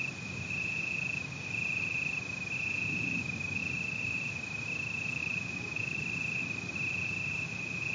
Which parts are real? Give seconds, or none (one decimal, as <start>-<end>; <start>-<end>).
0.0-3.6; 4.3-5.2; 6.4-7.9